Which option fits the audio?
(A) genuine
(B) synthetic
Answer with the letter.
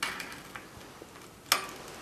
A